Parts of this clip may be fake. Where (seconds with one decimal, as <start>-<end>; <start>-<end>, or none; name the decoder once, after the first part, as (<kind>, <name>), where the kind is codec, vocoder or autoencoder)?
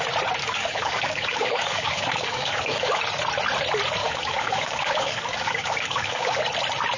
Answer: 0.4-3.0 (codec, DAC); 4.0-6.4